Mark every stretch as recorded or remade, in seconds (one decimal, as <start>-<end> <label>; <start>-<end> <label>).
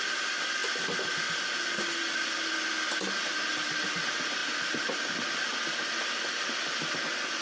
0.0-7.4 recorded